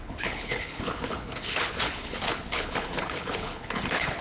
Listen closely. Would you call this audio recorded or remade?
remade